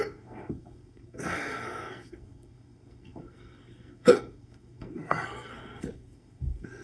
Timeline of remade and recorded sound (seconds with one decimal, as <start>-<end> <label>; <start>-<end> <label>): 0.0-6.8 remade